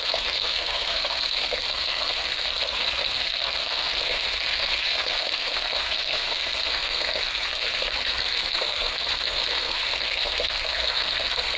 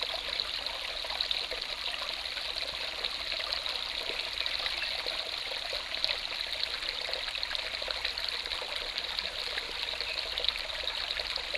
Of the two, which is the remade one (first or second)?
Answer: first